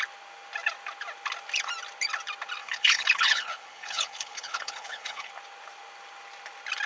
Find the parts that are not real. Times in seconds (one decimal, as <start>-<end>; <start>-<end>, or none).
2.6-5.3